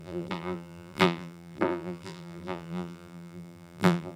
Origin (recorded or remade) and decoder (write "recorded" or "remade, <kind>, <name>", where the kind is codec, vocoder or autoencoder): remade, vocoder, BigVGAN v2